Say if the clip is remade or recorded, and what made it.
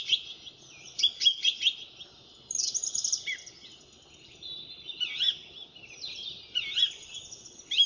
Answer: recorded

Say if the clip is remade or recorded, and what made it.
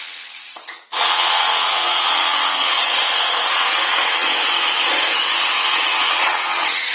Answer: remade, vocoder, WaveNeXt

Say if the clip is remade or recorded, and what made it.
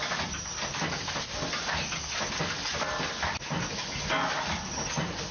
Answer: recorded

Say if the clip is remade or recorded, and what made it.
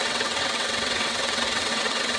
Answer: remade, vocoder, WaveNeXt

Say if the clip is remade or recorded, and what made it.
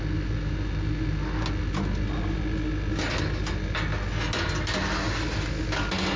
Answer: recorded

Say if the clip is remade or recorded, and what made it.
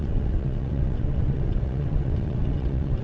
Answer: remade, vocoder, WaveNeXt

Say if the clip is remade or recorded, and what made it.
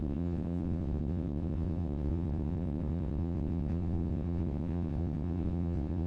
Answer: remade, vocoder, WaveNeXt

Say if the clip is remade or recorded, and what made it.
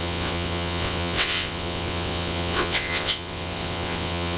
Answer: remade, vocoder, WaveNeXt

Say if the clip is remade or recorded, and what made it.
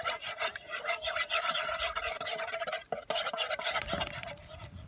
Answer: recorded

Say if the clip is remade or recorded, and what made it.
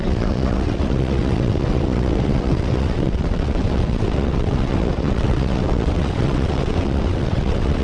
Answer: remade, vocoder, WaveNeXt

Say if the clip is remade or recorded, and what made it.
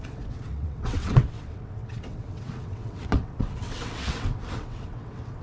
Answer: remade, vocoder, WaveNeXt